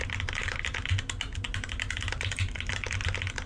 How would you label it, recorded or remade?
recorded